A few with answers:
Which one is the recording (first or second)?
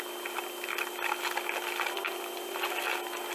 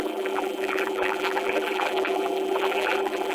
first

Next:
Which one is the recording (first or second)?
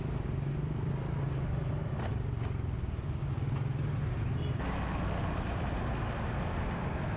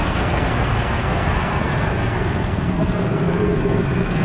first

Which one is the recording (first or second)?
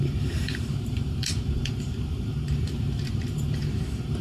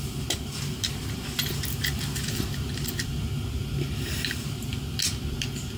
second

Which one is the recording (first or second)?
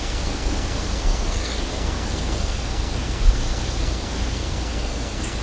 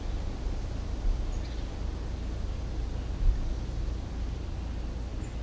second